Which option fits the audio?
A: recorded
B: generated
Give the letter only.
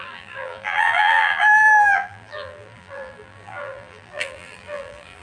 B